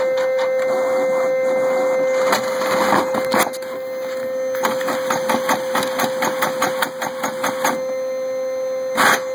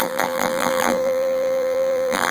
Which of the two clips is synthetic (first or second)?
second